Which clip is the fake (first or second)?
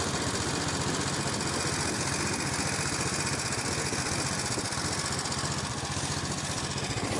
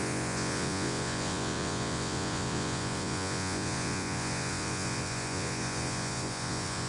second